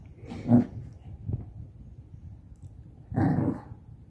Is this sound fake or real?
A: real